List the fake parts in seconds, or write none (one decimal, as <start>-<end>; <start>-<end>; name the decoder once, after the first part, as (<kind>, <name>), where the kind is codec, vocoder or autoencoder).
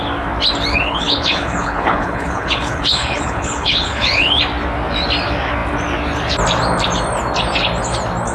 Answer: 0.7-4.4 (codec, HILCodec)